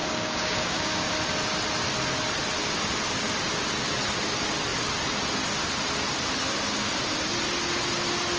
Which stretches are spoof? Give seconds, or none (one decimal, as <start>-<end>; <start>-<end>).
0.0-1.1